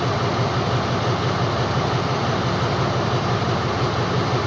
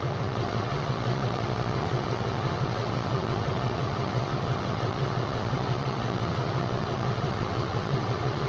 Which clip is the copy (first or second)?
second